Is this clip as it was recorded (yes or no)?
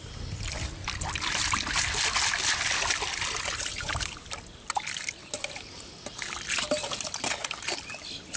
yes